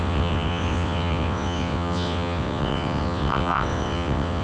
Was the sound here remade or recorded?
remade